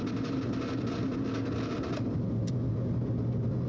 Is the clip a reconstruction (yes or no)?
no